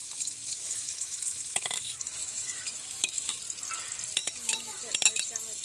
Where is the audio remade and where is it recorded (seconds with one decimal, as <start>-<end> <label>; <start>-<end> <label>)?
0.0-3.4 remade; 3.4-4.2 recorded; 4.2-4.9 remade; 4.9-5.6 recorded